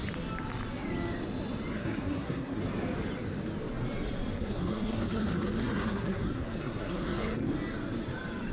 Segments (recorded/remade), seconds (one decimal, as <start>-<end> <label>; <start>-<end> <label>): 0.0-1.7 recorded; 1.7-2.6 remade; 2.6-4.3 recorded; 4.3-7.5 remade; 7.5-8.5 recorded